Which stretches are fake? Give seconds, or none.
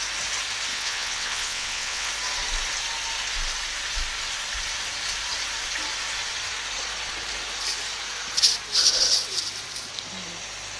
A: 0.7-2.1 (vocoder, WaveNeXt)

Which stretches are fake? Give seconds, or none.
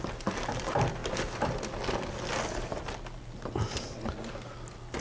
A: none